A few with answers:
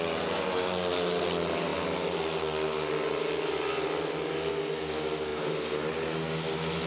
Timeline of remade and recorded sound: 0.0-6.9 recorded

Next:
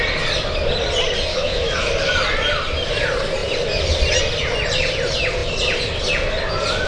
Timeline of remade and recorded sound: 0.0-1.3 recorded; 1.3-1.9 remade; 1.9-6.9 recorded

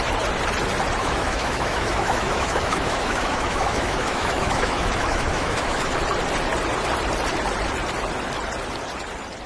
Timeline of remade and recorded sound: 0.0-1.0 recorded; 1.0-5.9 remade; 5.9-9.5 recorded

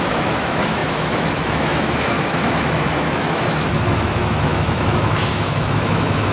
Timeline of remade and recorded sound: 0.0-6.3 remade

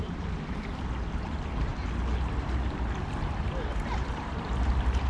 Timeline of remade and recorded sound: 0.0-5.1 recorded

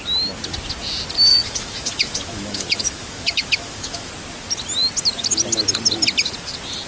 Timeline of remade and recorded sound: 0.0-1.3 recorded; 1.3-4.1 remade; 4.1-6.9 recorded

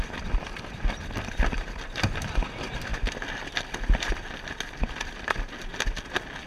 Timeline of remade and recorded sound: 0.0-6.5 recorded

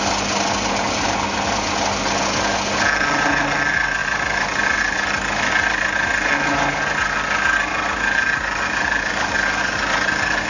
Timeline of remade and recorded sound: 0.0-10.5 recorded